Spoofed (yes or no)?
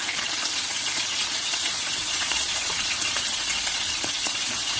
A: yes